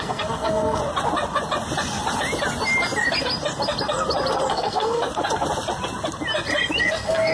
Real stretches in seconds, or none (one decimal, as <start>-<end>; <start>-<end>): 0.8-4.5; 5.1-6.8